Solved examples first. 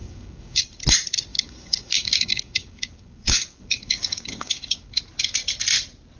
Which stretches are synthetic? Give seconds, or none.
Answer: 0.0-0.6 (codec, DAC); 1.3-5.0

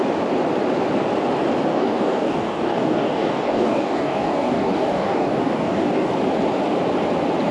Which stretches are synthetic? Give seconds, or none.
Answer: 1.7-6.1 (codec, DAC)

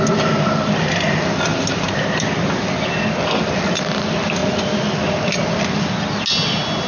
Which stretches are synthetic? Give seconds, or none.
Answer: none

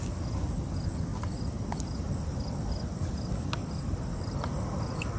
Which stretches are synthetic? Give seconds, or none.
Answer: none

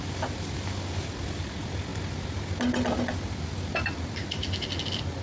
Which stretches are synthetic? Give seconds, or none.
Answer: none

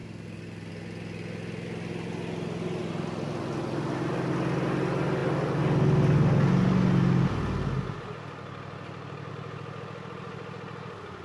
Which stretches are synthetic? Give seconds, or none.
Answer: none

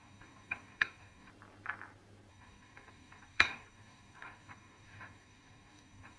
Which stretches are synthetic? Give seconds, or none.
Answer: 0.0-1.3 (codec, DAC); 2.3-6.2